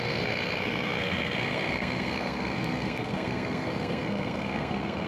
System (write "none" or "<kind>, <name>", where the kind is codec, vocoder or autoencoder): codec, SNAC